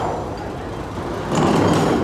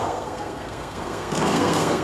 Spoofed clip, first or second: second